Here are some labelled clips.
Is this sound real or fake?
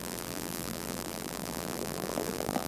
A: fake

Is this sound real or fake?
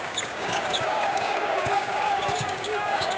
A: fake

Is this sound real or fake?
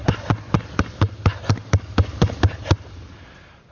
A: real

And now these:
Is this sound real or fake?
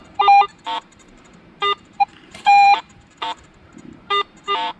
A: fake